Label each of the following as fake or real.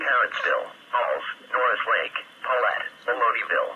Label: real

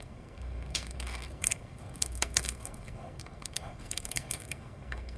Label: fake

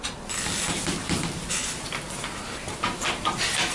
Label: real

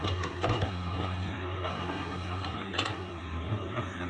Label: fake